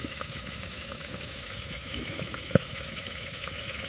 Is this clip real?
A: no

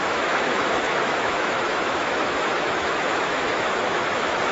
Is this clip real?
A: no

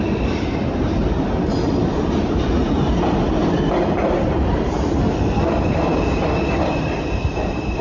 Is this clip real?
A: no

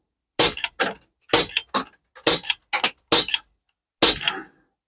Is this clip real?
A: yes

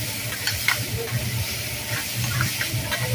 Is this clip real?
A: no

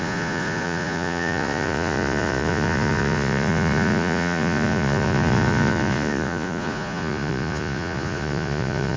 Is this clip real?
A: no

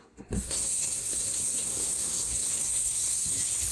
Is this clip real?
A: no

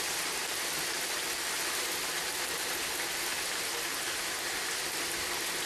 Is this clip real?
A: yes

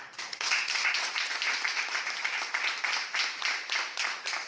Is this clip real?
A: yes